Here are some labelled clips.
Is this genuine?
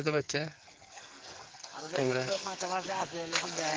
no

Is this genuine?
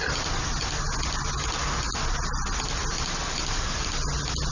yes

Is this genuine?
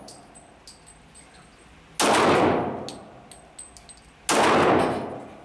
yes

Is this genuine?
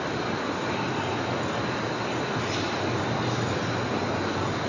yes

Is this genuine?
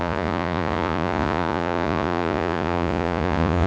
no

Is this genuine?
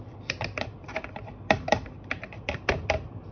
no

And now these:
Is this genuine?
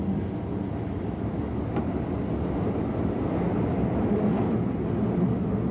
yes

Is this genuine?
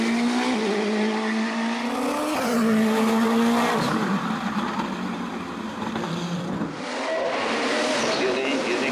yes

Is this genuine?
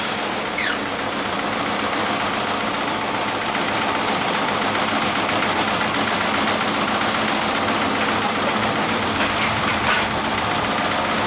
yes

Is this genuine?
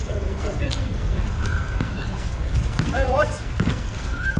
no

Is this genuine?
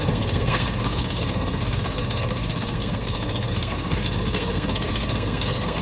no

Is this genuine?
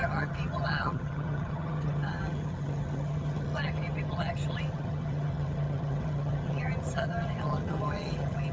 no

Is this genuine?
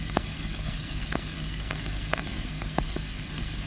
no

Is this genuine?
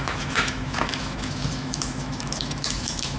no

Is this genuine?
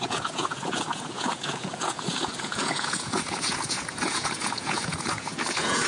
no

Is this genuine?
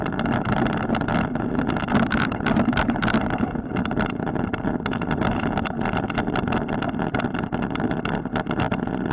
yes